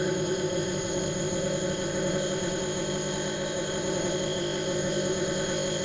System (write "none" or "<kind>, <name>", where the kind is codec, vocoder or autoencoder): codec, ZipCodec